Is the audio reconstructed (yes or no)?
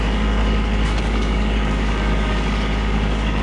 yes